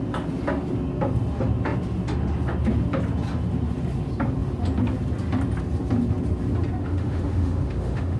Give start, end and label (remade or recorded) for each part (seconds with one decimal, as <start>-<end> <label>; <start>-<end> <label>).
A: 0.0-6.8 recorded; 6.8-8.2 remade